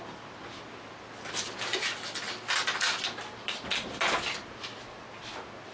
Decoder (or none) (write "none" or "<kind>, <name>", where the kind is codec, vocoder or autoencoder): none